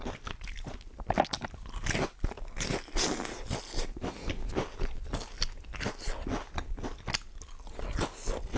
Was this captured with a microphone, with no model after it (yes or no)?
yes